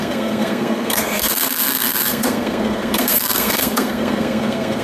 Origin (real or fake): fake